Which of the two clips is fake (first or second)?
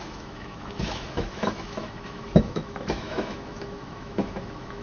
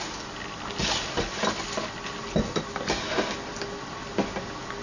first